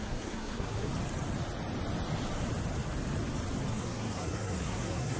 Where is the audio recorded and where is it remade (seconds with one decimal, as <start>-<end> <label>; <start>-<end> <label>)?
0.0-0.9 remade; 0.9-3.7 recorded; 3.7-5.2 remade